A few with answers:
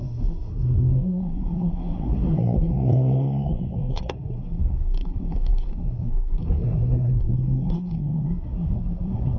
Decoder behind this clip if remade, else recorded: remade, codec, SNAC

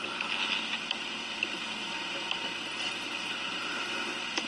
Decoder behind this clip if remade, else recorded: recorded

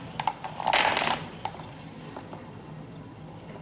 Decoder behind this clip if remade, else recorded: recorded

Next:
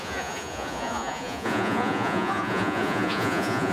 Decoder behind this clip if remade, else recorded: remade, vocoder, Vocos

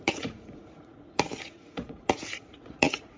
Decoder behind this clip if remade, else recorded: remade, vocoder, Vocos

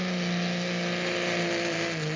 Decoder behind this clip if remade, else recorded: recorded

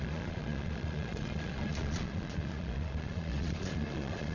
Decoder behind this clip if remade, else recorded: remade, vocoder, Vocos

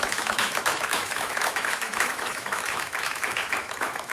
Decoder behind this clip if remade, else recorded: remade, autoencoder, DAC-VAE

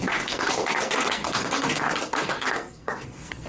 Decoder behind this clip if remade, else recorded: remade, codec, SNAC